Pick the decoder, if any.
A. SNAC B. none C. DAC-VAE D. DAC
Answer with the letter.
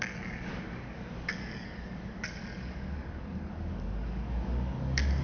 D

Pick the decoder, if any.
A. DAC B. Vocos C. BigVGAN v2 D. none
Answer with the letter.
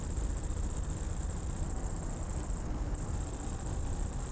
D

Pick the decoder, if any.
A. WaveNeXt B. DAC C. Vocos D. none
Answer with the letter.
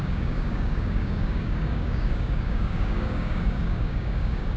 B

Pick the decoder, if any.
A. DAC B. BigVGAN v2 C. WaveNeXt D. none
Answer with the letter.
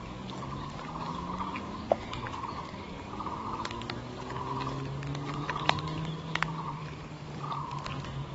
A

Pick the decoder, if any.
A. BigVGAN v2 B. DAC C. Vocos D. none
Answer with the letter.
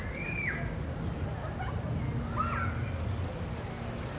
D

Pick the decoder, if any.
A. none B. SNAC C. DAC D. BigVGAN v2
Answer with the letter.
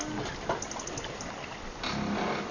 A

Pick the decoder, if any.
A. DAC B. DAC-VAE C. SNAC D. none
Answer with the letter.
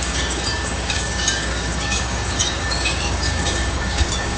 A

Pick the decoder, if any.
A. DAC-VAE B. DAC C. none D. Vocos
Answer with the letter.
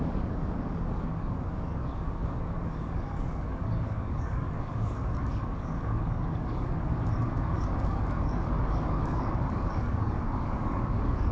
B